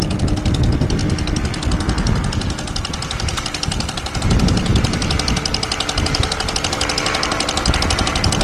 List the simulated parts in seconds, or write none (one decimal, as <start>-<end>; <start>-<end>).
1.0-4.2